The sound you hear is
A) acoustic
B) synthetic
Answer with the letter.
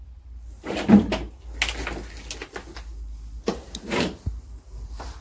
A